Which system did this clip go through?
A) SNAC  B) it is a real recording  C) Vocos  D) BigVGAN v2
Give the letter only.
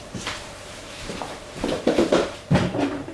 D